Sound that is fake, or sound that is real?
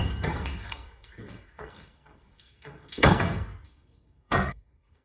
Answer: fake